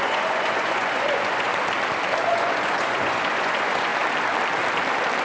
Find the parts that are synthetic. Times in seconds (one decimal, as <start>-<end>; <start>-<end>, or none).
0.0-1.5; 2.3-3.9